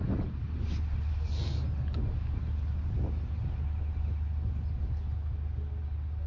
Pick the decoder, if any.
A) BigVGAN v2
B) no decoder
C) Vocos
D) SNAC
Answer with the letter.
B